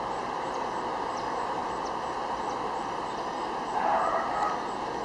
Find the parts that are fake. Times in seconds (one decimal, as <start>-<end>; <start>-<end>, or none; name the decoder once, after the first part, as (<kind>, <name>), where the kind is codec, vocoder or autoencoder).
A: none